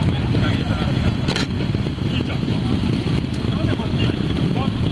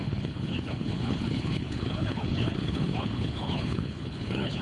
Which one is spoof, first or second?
second